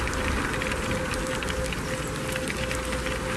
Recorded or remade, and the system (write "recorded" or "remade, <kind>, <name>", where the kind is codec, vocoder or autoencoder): recorded